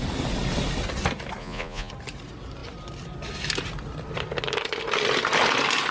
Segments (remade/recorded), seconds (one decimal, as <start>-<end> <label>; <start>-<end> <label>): 0.0-1.4 recorded; 1.4-1.9 remade; 1.9-5.9 recorded